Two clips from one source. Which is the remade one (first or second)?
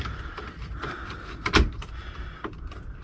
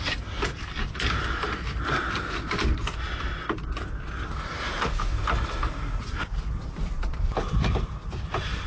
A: first